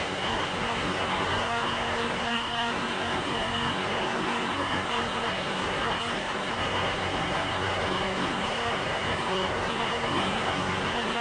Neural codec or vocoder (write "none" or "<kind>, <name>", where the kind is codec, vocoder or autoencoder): codec, SNAC